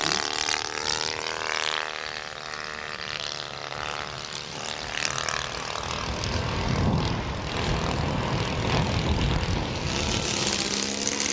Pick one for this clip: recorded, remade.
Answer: recorded